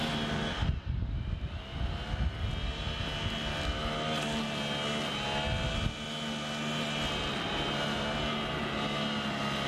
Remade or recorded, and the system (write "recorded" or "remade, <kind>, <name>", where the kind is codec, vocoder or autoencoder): recorded